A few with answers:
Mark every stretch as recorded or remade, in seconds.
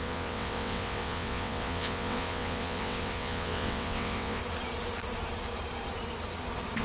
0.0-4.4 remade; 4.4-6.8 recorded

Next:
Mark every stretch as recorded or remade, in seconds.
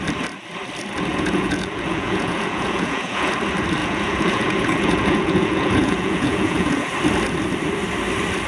0.0-1.1 recorded; 1.1-3.3 remade; 3.3-3.8 recorded; 3.8-6.9 remade; 6.9-8.5 recorded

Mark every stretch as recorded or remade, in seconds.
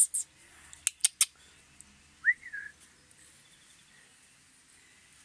0.0-5.2 recorded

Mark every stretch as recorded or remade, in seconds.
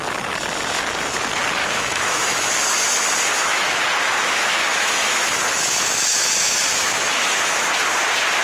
0.0-1.6 recorded; 1.6-2.5 remade; 2.5-3.3 recorded; 3.3-3.8 remade; 3.8-4.2 recorded; 4.2-7.7 remade; 7.7-8.4 recorded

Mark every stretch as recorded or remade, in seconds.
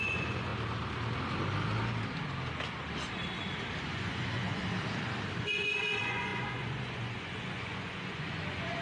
0.0-0.5 remade; 0.5-3.8 recorded; 3.8-4.6 remade; 4.6-5.4 recorded; 5.4-8.8 remade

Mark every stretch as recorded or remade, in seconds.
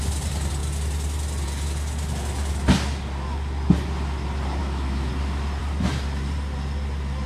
0.0-4.6 recorded; 4.6-5.1 remade; 5.1-7.3 recorded